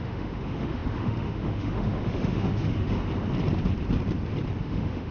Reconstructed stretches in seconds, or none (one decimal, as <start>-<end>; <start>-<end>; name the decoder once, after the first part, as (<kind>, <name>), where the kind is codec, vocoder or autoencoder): 0.0-3.0 (autoencoder, DAC-VAE); 4.6-5.1